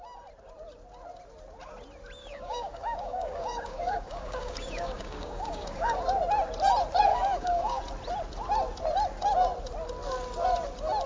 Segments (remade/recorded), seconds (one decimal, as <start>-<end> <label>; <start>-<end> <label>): 0.0-2.2 recorded; 2.2-6.0 remade; 6.0-7.1 recorded; 7.1-7.8 remade; 7.8-11.1 recorded